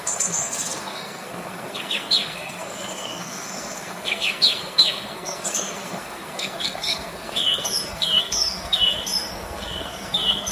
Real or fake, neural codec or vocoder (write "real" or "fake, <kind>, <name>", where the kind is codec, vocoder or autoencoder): fake, codec, SNAC